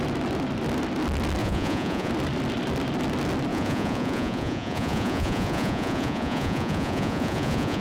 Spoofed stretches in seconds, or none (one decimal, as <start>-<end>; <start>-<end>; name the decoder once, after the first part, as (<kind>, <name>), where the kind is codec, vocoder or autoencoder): 1.4-2.1 (vocoder, Vocos); 3.5-7.8